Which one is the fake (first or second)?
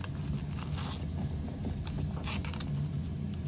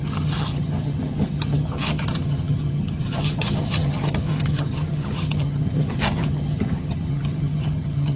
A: second